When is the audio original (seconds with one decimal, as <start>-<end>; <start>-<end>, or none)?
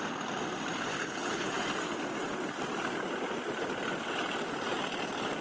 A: 0.0-0.9; 1.5-5.4